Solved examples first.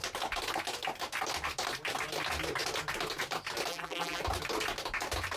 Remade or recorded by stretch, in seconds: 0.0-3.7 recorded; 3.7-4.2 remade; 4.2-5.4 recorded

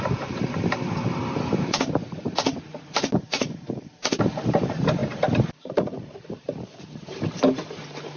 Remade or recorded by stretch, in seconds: 0.0-5.0 remade; 5.0-5.6 recorded; 5.6-8.2 remade

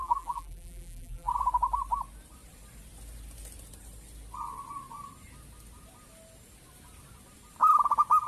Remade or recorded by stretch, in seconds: 0.0-1.3 remade; 1.3-8.3 recorded

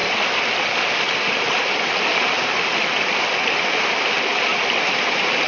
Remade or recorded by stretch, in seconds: 0.0-2.1 recorded; 2.1-3.1 remade; 3.1-4.5 recorded; 4.5-5.1 remade; 5.1-5.5 recorded

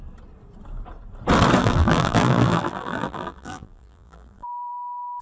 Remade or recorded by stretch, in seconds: 0.0-1.6 recorded; 1.6-4.7 remade; 4.7-5.2 recorded